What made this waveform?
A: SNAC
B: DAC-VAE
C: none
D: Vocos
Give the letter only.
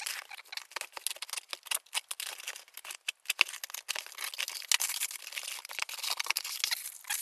C